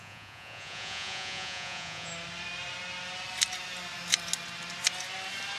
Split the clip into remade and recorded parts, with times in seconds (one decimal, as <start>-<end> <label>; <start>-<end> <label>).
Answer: 0.0-2.1 remade; 2.1-5.6 recorded

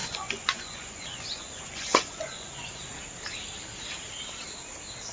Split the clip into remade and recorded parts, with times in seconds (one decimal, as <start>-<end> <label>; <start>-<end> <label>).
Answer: 0.0-2.8 remade; 2.8-5.1 recorded

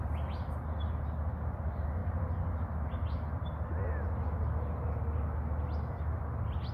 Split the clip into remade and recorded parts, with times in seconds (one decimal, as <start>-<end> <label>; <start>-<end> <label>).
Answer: 0.0-6.7 recorded

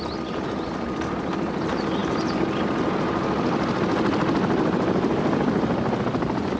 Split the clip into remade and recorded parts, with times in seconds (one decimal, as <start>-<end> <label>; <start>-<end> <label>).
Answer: 0.0-6.6 recorded

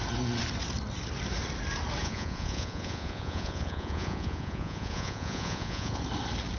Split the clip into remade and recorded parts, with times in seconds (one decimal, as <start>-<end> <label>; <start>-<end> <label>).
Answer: 0.0-2.0 recorded; 2.0-6.0 remade; 6.0-6.6 recorded